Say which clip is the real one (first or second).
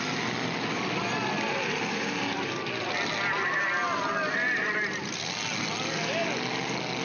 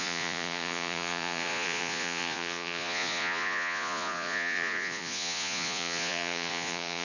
first